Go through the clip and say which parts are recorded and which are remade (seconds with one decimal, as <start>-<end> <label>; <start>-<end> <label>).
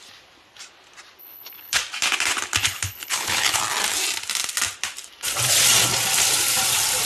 0.0-1.2 recorded; 1.2-1.8 remade; 1.8-2.6 recorded; 2.6-3.6 remade; 3.6-7.1 recorded